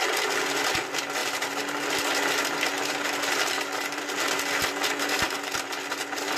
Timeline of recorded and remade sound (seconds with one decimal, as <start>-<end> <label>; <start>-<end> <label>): 0.0-6.4 recorded